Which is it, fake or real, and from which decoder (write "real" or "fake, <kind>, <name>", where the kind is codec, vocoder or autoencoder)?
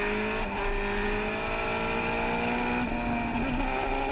real